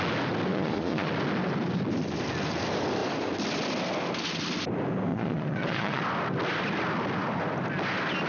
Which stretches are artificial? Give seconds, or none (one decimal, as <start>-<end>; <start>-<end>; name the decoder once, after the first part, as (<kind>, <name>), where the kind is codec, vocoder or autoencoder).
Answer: 0.5-1.1 (vocoder, Vocos); 5.1-6.0